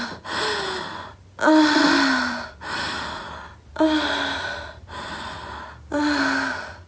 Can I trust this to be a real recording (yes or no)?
yes